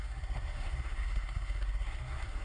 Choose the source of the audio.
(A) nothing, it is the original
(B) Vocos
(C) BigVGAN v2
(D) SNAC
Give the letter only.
D